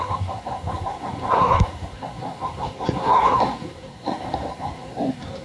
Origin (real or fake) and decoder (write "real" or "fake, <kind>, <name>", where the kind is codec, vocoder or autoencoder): fake, codec, SNAC